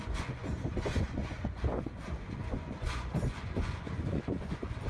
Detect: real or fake fake